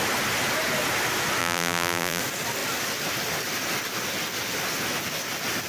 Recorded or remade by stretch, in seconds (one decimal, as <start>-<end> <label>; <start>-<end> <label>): 0.0-1.4 recorded; 1.4-2.2 remade; 2.2-5.7 recorded